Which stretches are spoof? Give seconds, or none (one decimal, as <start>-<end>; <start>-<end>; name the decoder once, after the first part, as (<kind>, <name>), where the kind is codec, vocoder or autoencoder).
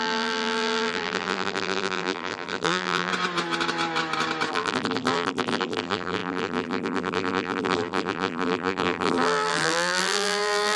0.0-3.1 (vocoder, BigVGAN v2); 4.5-10.8